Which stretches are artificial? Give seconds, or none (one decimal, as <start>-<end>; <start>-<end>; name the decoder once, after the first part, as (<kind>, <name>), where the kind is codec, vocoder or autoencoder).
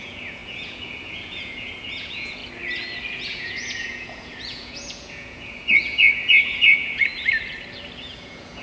0.0-2.4 (vocoder, Vocos); 3.1-7.1; 8.0-8.6